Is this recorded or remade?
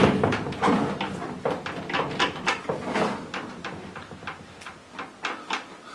recorded